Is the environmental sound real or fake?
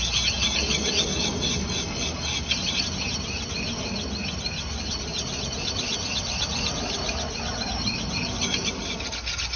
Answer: real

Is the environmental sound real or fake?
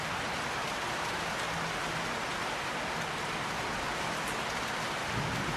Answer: real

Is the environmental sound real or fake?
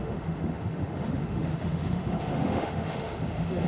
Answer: fake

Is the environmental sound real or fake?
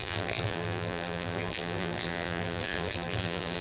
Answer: fake